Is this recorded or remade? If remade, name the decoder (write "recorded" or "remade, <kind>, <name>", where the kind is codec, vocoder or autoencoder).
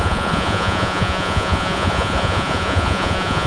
remade, vocoder, Vocos